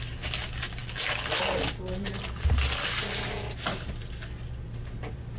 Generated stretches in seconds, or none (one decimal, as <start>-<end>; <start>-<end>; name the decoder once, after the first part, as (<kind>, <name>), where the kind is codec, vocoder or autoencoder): none